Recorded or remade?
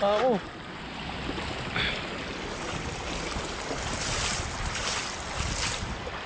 recorded